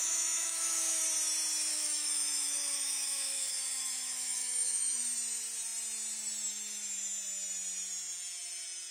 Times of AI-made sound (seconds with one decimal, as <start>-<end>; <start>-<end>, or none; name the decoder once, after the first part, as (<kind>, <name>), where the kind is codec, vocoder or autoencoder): 0.0-1.0 (autoencoder, DAC-VAE); 1.7-5.0